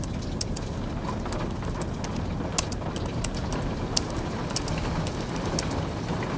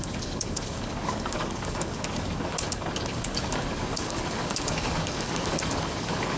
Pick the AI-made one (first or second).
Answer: second